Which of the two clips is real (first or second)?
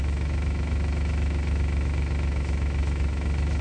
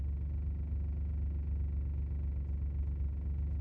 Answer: second